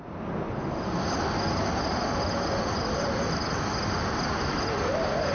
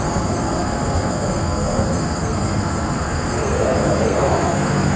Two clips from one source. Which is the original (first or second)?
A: first